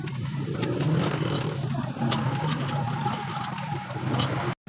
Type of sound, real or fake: real